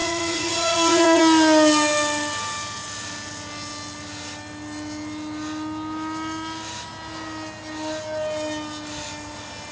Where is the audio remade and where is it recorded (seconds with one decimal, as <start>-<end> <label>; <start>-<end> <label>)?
0.0-1.2 remade; 1.2-9.7 recorded